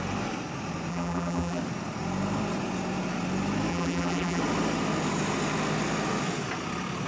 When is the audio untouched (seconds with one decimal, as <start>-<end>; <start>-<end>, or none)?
0.0-0.9; 1.6-3.7; 4.4-7.1